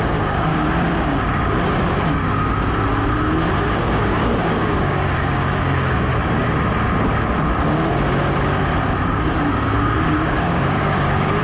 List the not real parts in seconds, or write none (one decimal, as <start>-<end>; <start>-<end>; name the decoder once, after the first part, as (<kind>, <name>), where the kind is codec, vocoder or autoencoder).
0.0-0.5 (codec, DAC); 3.7-6.1; 9.1-11.4